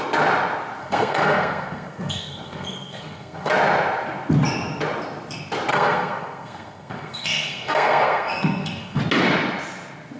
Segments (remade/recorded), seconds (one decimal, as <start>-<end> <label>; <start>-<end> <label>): 0.0-0.8 recorded; 0.8-3.5 remade; 3.5-5.7 recorded; 5.7-9.0 remade; 9.0-10.2 recorded